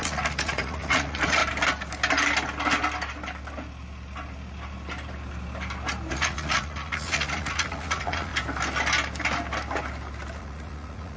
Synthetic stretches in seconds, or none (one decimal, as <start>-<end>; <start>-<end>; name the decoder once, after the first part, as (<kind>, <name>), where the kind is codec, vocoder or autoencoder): 0.0-1.4 (vocoder, Vocos); 6.1-8.3; 10.4-11.2